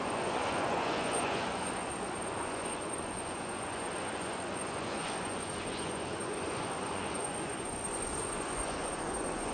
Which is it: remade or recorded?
remade